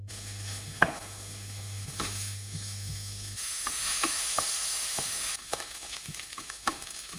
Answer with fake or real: fake